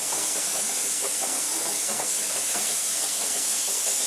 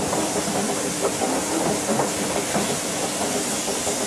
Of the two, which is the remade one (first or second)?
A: first